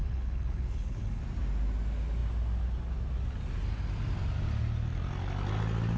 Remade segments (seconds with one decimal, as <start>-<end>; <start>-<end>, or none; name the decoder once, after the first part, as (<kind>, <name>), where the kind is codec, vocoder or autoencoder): 0.0-1.2 (codec, HILCodec)